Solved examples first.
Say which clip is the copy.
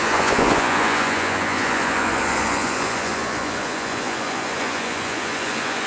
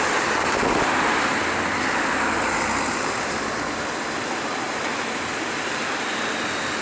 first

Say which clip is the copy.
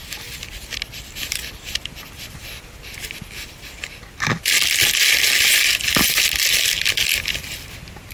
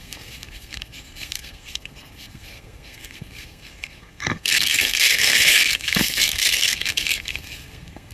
second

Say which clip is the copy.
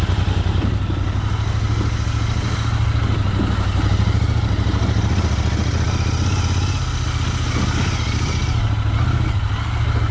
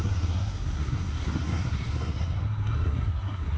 second